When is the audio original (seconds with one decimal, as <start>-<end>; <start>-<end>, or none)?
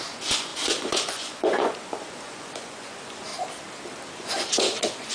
3.3-4.1